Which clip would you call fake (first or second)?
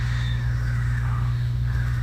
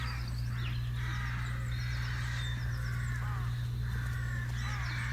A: first